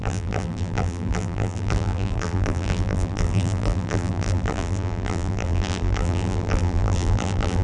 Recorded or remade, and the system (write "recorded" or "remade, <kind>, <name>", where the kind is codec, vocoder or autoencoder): remade, vocoder, BigVGAN v2